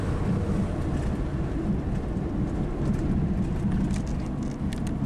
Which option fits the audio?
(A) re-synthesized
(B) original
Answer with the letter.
B